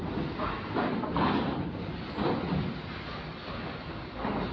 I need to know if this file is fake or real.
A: real